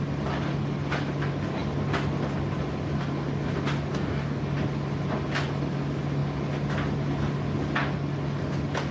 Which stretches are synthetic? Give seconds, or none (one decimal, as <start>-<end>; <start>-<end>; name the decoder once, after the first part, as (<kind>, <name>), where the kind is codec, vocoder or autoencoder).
3.9-4.4 (codec, DAC)